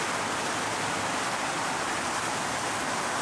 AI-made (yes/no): no